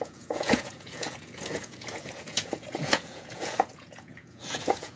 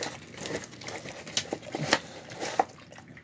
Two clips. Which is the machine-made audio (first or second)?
first